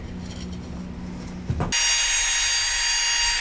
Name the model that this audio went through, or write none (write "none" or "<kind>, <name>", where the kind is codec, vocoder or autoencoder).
none